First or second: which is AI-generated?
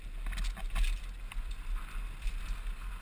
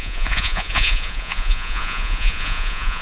second